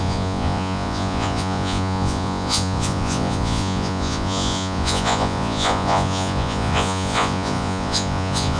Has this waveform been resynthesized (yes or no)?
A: yes